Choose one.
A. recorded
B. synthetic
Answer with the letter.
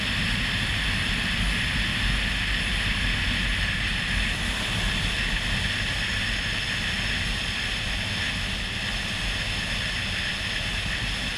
A